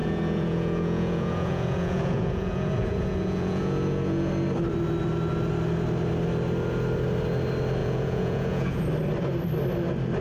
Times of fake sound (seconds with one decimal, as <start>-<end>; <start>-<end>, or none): 0.0-4.3; 7.8-8.8